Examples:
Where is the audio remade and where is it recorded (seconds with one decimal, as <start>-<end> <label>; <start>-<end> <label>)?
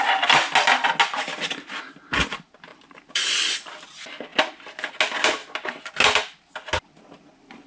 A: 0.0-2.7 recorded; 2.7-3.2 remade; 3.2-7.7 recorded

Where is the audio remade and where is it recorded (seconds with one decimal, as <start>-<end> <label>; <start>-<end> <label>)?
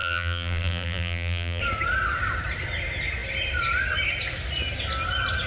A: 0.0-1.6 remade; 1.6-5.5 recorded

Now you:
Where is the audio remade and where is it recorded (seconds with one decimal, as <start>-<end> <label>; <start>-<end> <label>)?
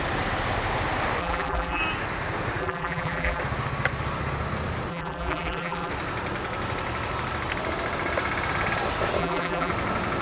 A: 0.0-1.2 recorded; 1.2-1.8 remade; 1.8-2.6 recorded; 2.6-3.4 remade; 3.4-4.9 recorded; 4.9-5.9 remade; 5.9-9.2 recorded; 9.2-9.7 remade; 9.7-10.2 recorded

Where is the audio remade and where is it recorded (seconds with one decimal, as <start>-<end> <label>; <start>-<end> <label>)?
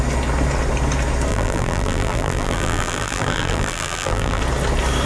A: 0.0-1.3 recorded; 1.3-4.4 remade; 4.4-5.1 recorded